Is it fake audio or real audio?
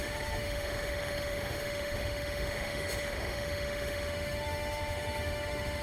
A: fake